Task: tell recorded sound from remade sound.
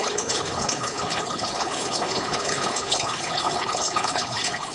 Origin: remade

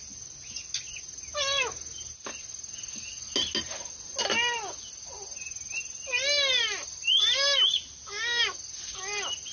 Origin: recorded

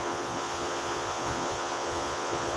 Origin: remade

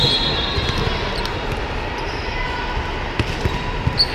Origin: recorded